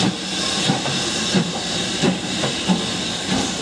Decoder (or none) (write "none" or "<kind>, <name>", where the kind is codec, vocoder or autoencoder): none